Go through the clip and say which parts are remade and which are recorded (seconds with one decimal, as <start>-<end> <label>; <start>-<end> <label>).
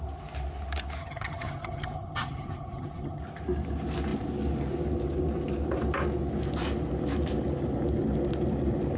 0.0-1.0 recorded; 1.0-3.2 remade; 3.2-9.0 recorded